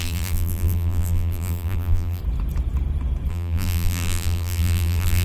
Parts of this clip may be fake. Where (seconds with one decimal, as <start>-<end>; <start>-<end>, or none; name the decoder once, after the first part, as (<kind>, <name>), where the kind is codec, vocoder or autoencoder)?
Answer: 0.0-2.2 (vocoder, BigVGAN v2); 3.3-5.2